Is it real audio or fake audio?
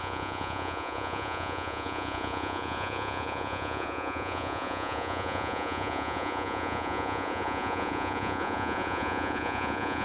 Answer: fake